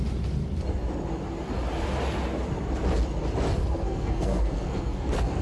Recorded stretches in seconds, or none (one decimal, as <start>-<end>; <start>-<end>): 0.0-3.6